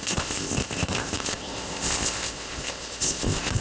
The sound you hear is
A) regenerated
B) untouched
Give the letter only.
A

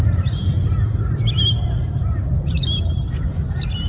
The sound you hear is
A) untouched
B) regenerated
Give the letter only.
A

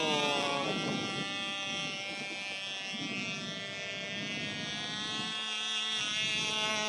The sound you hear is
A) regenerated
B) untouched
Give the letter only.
B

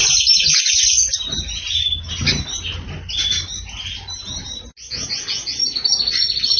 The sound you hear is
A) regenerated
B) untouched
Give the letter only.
B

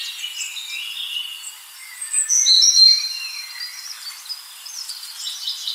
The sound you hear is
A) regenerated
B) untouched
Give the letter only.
B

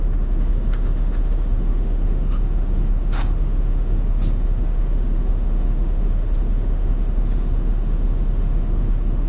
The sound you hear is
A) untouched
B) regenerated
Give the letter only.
B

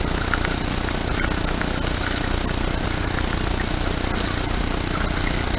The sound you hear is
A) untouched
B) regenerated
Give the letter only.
A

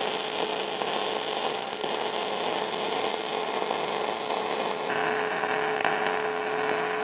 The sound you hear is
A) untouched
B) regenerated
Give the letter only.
A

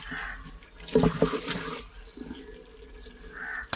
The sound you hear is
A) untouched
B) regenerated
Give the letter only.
A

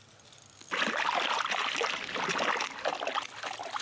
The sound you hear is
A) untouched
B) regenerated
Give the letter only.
A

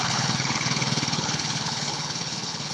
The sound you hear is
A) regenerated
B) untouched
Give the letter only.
A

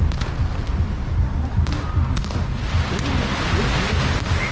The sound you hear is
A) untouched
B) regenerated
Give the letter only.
A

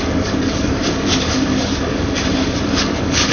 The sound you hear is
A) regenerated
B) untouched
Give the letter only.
A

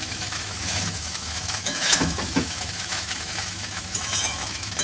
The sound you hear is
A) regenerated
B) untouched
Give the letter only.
A